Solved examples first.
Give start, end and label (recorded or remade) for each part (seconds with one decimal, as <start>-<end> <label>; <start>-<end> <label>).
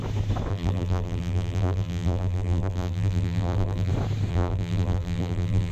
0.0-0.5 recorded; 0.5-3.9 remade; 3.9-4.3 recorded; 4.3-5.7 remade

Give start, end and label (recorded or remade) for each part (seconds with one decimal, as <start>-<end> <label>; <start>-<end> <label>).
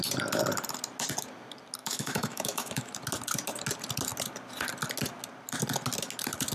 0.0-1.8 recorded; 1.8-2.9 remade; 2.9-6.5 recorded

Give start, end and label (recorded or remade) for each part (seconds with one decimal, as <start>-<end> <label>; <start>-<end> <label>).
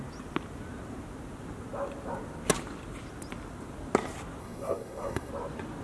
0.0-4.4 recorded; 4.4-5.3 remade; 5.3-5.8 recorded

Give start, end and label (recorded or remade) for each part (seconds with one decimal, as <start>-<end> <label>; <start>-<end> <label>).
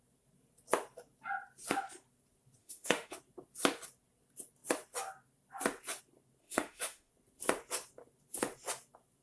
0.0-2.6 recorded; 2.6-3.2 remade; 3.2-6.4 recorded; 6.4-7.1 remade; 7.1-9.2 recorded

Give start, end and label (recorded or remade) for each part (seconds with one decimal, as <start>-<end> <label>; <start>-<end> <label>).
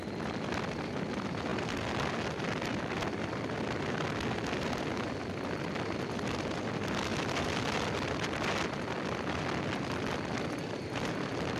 0.0-1.5 recorded; 1.5-2.8 remade; 2.8-7.1 recorded; 7.1-10.5 remade; 10.5-11.6 recorded